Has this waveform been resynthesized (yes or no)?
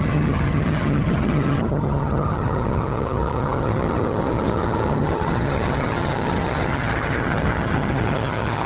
yes